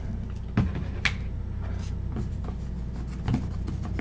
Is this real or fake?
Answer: real